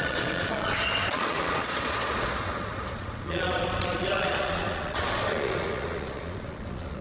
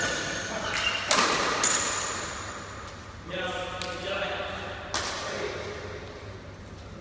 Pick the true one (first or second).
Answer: second